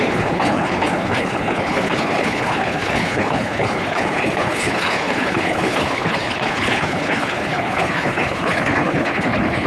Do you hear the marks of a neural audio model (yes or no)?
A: yes